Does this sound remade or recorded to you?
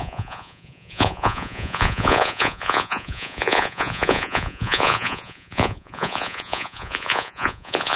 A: remade